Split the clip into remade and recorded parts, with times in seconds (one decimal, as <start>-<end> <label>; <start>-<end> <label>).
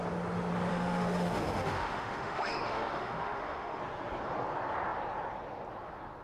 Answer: 0.0-0.7 recorded; 0.7-3.8 remade; 3.8-6.2 recorded